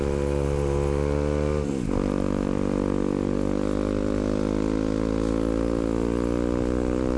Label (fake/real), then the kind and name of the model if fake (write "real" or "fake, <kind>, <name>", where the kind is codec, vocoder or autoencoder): real